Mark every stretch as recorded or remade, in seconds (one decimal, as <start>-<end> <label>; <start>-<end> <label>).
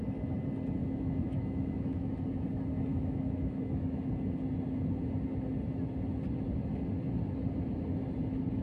0.0-0.8 recorded; 0.8-2.1 remade; 2.1-2.9 recorded; 2.9-4.1 remade; 4.1-8.6 recorded